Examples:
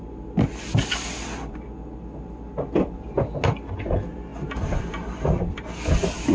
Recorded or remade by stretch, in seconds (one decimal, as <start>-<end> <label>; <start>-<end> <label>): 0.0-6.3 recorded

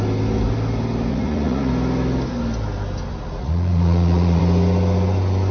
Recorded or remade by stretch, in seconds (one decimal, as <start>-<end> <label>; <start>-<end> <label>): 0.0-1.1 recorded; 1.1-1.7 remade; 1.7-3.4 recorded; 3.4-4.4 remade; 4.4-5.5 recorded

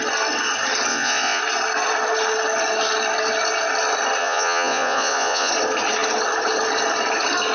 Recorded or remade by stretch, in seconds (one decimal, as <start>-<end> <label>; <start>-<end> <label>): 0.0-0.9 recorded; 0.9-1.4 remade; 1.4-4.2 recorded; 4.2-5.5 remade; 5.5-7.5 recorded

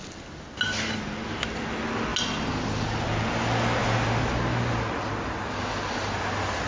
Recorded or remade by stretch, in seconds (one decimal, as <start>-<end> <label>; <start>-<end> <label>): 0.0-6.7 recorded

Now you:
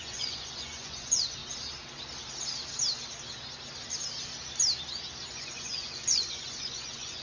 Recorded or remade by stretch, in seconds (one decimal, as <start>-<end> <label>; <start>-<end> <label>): 0.0-1.4 remade; 1.4-5.3 recorded; 5.3-7.2 remade

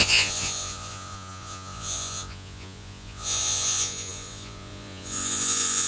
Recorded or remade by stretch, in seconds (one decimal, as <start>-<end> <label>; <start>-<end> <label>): 0.0-5.9 remade

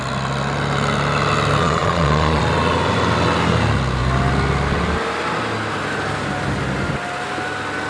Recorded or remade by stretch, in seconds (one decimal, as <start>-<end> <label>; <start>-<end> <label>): 0.0-1.6 recorded; 1.6-2.4 remade; 2.4-7.9 recorded

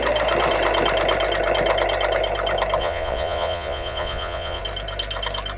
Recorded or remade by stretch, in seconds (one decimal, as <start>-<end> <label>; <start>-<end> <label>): 0.0-2.8 recorded; 2.8-4.6 remade; 4.6-5.6 recorded